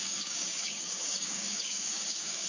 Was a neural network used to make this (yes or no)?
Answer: yes